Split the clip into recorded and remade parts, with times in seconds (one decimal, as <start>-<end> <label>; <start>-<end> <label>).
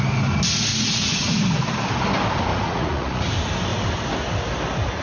0.0-0.7 recorded; 0.7-1.4 remade; 1.4-2.5 recorded; 2.5-3.3 remade; 3.3-5.0 recorded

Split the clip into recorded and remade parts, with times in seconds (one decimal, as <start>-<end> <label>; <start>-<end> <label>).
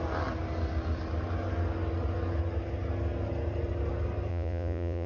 0.0-4.3 recorded; 4.3-5.1 remade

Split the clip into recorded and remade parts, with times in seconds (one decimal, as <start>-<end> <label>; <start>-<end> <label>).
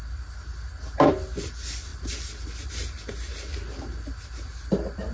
0.0-5.1 recorded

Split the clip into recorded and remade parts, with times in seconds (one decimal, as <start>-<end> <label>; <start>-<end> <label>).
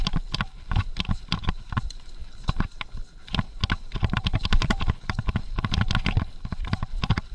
0.0-7.3 recorded